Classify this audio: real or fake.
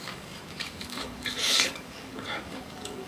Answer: fake